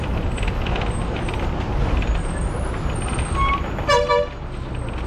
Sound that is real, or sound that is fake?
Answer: real